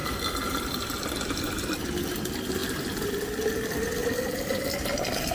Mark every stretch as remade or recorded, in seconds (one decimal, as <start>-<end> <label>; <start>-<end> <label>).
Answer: 0.0-1.8 remade; 1.8-4.0 recorded; 4.0-4.5 remade; 4.5-5.3 recorded